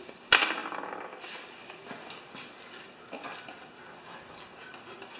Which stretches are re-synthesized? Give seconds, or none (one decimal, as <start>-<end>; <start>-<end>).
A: none

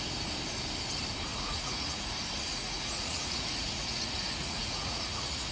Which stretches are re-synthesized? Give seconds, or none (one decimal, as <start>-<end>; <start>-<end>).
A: 1.3-2.1; 2.5-5.5

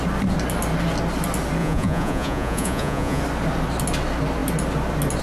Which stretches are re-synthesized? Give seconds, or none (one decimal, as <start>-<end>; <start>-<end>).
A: 1.6-3.2

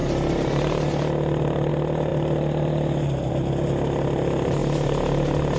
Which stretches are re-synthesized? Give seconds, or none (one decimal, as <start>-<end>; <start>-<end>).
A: none

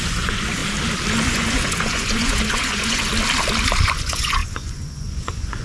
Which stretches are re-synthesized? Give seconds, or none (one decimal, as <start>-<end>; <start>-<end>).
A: 0.0-0.6; 1.3-3.1; 3.8-5.6

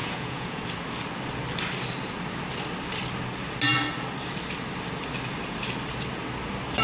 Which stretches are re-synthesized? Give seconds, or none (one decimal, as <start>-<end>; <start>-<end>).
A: 0.0-0.6